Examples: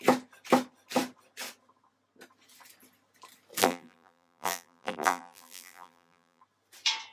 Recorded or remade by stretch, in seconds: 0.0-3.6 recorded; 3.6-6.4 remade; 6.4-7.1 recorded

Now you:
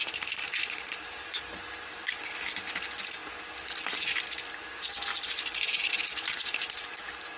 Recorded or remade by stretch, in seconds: 0.0-1.4 remade; 1.4-5.1 recorded; 5.1-5.9 remade; 5.9-7.4 recorded

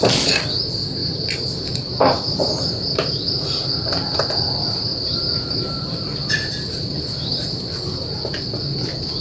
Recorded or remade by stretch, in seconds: 0.0-1.0 recorded; 1.0-3.7 remade; 3.7-4.9 recorded; 4.9-8.2 remade; 8.2-9.2 recorded

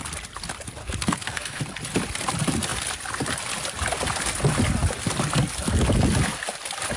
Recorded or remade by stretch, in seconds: 0.0-0.8 recorded; 0.8-1.6 remade; 1.6-7.0 recorded

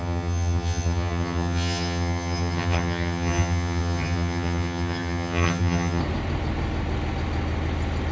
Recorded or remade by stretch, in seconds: 0.0-6.0 remade; 6.0-8.1 recorded

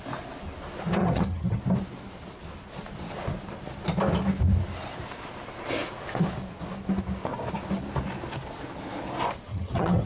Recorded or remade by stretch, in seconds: 0.0-1.0 recorded; 1.0-1.6 remade; 1.6-9.5 recorded; 9.5-10.1 remade

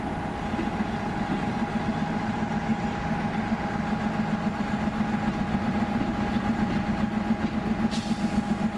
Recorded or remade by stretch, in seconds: 0.0-8.8 recorded